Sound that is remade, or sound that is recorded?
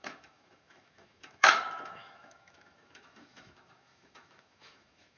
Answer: remade